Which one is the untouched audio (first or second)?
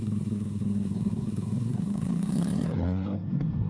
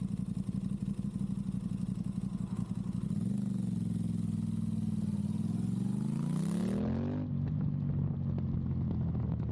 second